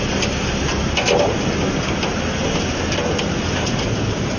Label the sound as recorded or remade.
recorded